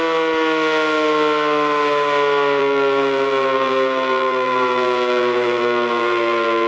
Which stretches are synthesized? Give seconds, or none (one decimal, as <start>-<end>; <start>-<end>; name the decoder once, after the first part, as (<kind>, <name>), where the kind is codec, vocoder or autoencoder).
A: 2.6-6.7 (vocoder, BigVGAN v2)